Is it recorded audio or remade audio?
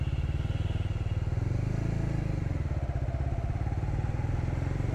recorded